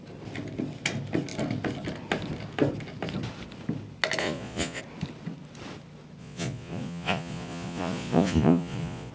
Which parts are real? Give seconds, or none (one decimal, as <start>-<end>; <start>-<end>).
0.0-4.2; 4.8-6.2